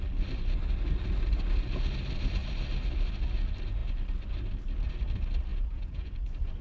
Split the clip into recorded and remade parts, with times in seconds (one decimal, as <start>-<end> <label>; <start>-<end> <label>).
0.0-5.5 recorded; 5.5-6.1 remade; 6.1-6.6 recorded